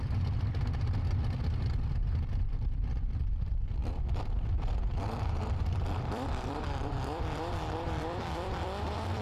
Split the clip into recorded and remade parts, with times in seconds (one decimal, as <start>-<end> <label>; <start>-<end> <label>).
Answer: 0.0-3.8 remade; 3.8-4.7 recorded; 4.7-9.2 remade